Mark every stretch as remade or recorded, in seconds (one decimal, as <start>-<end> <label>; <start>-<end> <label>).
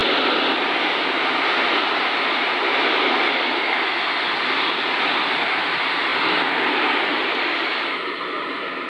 0.0-8.9 recorded